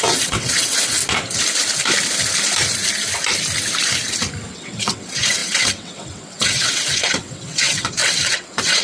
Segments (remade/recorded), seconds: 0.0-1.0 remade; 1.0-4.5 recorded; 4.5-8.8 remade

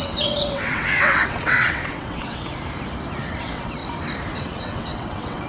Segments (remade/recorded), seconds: 0.0-2.5 remade; 2.5-3.2 recorded; 3.2-3.8 remade; 3.8-4.4 recorded; 4.4-5.5 remade

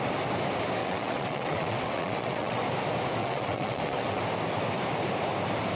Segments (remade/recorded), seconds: 0.0-0.8 recorded; 0.8-2.6 remade; 2.6-3.2 recorded; 3.2-4.2 remade; 4.2-5.8 recorded

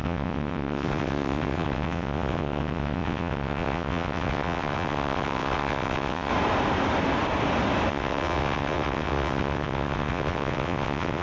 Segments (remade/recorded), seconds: 0.0-6.3 remade; 6.3-7.9 recorded; 7.9-11.2 remade

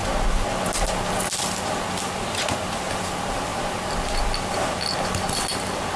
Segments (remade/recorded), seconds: 0.0-6.0 recorded

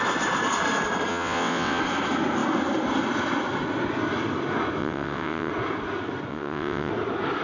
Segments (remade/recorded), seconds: 0.0-1.1 recorded; 1.1-1.8 remade; 1.8-4.8 recorded; 4.8-5.5 remade; 5.5-6.3 recorded; 6.3-6.9 remade; 6.9-7.4 recorded

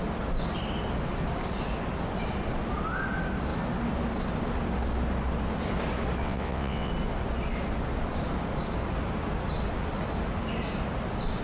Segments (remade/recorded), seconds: 0.0-6.2 recorded; 6.2-6.9 remade; 6.9-11.4 recorded

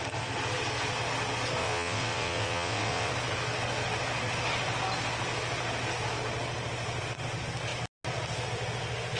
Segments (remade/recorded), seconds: 0.0-1.6 recorded; 1.6-3.1 remade; 3.1-9.2 recorded